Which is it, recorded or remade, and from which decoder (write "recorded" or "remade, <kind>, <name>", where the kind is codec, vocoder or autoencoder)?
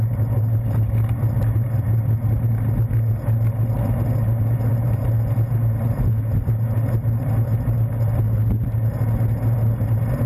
recorded